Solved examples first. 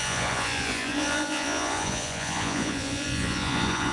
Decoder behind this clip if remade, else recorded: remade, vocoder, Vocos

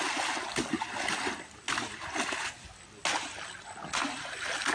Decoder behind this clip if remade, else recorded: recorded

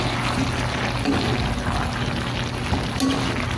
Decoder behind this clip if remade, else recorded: recorded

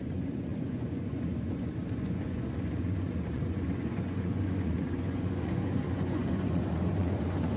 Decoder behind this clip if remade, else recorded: remade, vocoder, Vocos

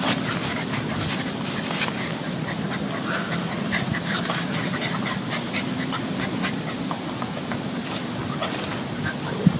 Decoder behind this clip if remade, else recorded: recorded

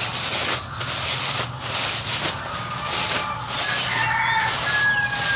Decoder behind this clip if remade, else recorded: recorded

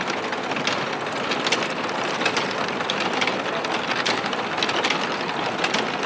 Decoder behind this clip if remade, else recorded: recorded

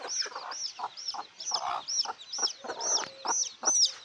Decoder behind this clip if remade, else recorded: recorded